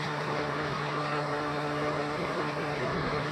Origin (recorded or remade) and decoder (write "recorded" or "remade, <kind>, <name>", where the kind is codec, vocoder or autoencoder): remade, codec, SNAC